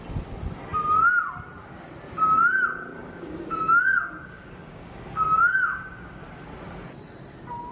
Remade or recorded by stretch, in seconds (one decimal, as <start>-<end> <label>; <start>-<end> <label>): 0.0-3.0 recorded; 3.0-6.2 remade; 6.2-7.7 recorded

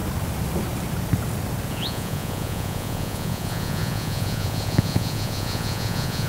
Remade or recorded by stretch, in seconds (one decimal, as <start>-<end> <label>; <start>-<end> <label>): 0.0-1.7 recorded; 1.7-6.3 remade

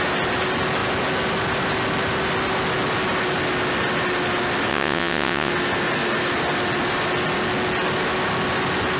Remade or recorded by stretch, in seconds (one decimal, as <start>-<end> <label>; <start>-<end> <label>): 0.0-4.7 recorded; 4.7-5.5 remade; 5.5-9.0 recorded

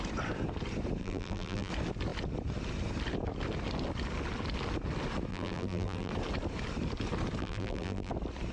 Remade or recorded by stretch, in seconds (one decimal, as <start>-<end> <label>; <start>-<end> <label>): 0.0-1.0 recorded; 1.0-1.7 remade; 1.7-5.3 recorded; 5.3-6.1 remade; 6.1-7.4 recorded; 7.4-8.1 remade; 8.1-8.5 recorded

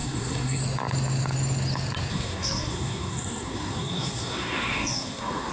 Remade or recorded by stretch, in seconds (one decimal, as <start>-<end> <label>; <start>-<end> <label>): 0.0-0.6 remade; 0.6-2.1 recorded; 2.1-5.5 remade

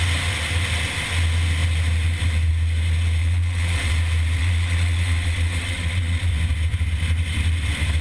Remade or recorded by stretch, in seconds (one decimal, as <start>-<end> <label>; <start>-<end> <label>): 0.0-3.2 recorded; 3.2-3.9 remade; 3.9-4.4 recorded; 4.4-6.3 remade; 6.3-8.0 recorded

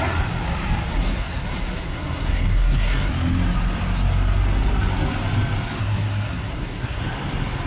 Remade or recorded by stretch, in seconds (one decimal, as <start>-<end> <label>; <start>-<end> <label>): 0.0-0.9 recorded; 0.9-3.1 remade; 3.1-5.8 recorded; 5.8-7.0 remade; 7.0-7.7 recorded

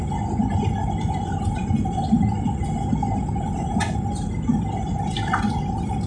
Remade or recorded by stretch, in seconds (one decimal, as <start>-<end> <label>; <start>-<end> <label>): 0.0-6.1 recorded